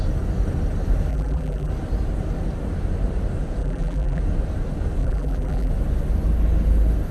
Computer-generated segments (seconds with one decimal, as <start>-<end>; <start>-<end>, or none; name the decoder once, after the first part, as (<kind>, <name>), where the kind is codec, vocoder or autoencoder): 1.1-1.7 (vocoder, BigVGAN v2); 3.6-4.2; 5.0-5.7